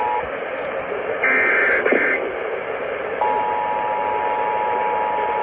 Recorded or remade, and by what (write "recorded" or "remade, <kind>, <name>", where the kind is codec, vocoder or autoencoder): recorded